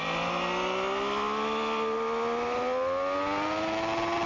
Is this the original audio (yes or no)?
yes